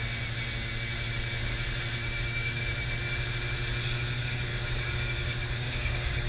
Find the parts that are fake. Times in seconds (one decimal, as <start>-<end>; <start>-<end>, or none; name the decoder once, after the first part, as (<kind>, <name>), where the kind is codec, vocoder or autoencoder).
2.0-2.6 (codec, DAC); 4.5-6.3